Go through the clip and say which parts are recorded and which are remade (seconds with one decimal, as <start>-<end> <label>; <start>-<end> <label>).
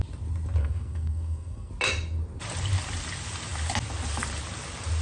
0.0-0.6 recorded; 0.6-1.7 remade; 1.7-5.0 recorded